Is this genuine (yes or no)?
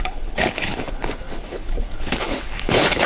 no